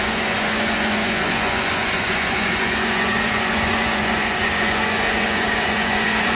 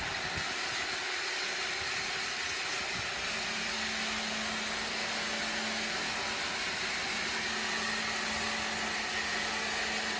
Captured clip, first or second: second